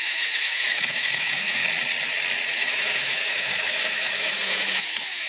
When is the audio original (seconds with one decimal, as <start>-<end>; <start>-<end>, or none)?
1.6-2.5

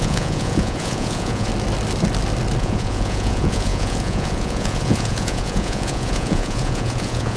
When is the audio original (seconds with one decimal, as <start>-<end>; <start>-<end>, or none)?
1.5-2.6

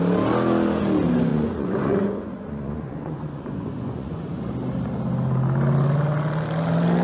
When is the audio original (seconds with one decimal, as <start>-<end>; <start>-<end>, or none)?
0.0-1.3; 4.5-7.0

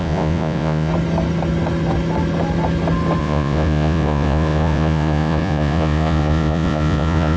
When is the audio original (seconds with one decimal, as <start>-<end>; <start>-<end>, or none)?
0.9-3.2

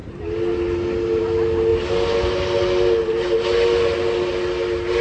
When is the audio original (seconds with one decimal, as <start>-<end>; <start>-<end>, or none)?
0.0-5.0

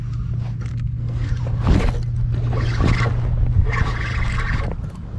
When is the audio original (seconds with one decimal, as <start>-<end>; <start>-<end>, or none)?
0.0-0.7; 1.3-5.2